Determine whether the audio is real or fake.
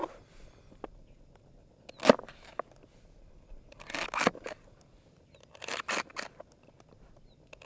real